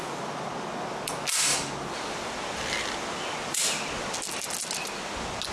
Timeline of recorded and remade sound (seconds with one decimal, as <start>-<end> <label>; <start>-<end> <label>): 0.0-5.5 recorded